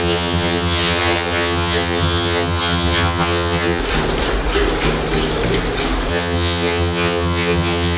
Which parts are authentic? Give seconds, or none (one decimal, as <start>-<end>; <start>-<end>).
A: 3.8-6.1